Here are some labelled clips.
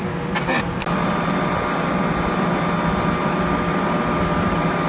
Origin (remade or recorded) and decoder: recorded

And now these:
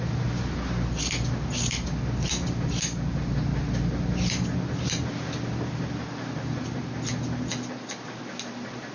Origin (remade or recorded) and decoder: recorded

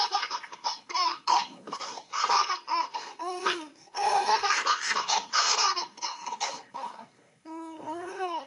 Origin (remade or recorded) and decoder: remade, codec, SNAC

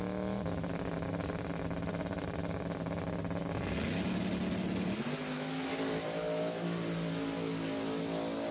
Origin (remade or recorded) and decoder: recorded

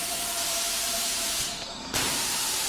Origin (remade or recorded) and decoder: remade, vocoder, BigVGAN v2